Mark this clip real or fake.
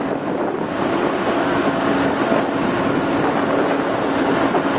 real